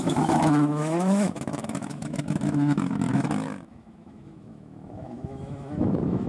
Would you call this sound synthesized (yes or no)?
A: yes